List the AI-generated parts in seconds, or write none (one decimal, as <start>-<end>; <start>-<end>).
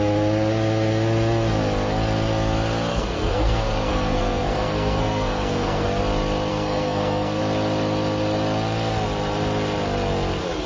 2.9-6.0; 6.5-7.4